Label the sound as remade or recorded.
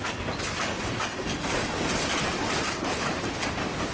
recorded